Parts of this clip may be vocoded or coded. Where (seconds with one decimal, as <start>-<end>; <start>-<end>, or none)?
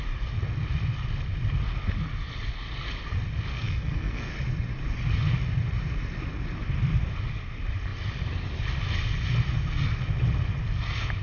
3.5-4.3